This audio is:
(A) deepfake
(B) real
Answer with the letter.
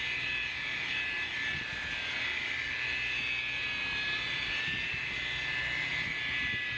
B